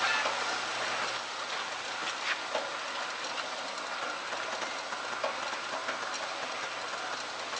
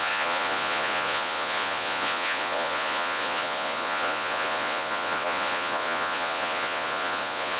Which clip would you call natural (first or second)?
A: first